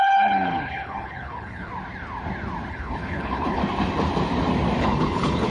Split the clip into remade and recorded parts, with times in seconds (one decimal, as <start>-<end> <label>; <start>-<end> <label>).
0.0-1.7 remade; 1.7-2.7 recorded; 2.7-3.6 remade; 3.6-4.8 recorded; 4.8-5.5 remade